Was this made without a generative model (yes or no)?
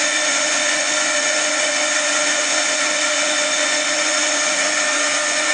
no